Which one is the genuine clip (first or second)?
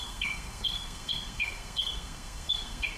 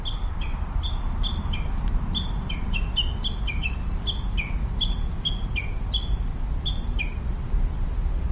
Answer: second